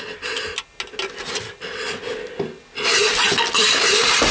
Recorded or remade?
recorded